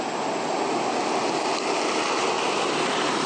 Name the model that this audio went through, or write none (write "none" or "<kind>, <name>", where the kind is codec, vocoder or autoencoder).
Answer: none